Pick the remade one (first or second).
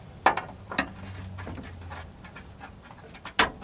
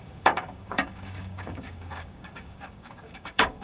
second